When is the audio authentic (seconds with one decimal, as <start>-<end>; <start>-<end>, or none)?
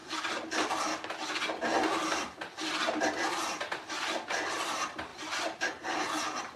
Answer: 0.0-3.0; 5.1-6.1